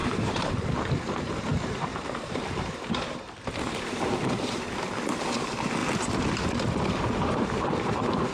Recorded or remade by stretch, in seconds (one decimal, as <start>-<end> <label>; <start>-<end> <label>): 0.0-0.6 remade; 0.6-1.9 recorded; 1.9-4.8 remade; 4.8-8.3 recorded